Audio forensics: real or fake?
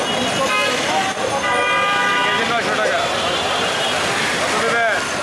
real